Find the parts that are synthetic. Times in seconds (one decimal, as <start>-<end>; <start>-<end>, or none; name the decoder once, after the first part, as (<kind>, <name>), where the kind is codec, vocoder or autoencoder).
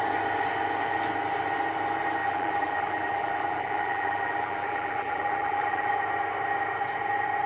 2.2-5.9 (vocoder, BigVGAN v2)